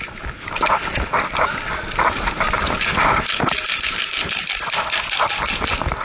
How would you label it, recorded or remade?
recorded